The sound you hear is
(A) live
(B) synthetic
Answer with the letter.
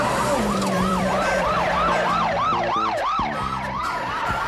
B